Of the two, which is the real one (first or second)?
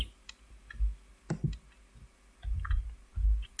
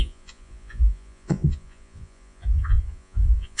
first